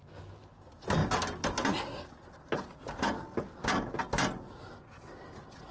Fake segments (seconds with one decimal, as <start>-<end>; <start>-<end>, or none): none